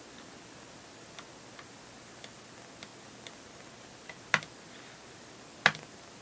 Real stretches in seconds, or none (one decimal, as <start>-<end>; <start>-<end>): 0.0-6.2